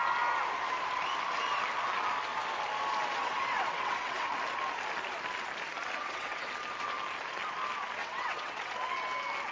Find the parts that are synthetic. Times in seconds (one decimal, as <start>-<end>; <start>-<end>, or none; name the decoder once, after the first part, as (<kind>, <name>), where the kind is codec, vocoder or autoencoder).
3.2-4.3 (vocoder, WaveNeXt); 6.0-6.5; 8.0-8.7